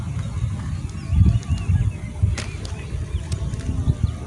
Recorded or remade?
recorded